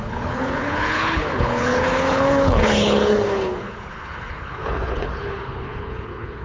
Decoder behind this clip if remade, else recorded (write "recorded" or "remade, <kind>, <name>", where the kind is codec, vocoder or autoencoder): remade, codec, HILCodec